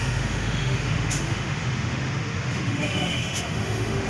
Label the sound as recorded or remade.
remade